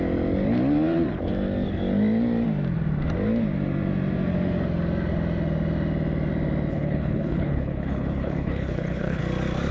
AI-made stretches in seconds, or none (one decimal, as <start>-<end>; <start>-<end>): 6.7-9.2